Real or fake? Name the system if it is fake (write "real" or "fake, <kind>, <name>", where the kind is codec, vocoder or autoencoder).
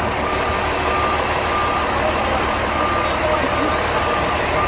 real